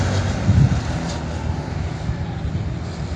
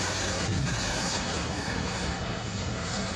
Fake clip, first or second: second